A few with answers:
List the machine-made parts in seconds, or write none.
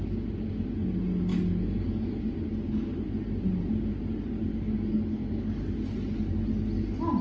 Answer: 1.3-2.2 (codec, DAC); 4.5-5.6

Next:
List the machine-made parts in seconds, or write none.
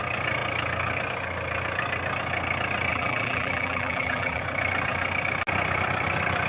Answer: 2.9-4.4 (vocoder, BigVGAN v2)